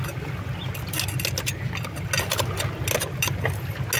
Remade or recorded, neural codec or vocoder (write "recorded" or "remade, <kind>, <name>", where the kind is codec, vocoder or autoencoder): recorded